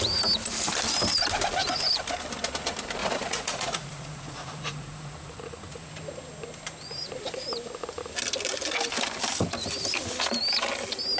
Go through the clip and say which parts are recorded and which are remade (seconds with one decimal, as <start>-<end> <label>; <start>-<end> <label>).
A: 0.0-3.0 recorded; 3.0-5.9 remade; 5.9-11.2 recorded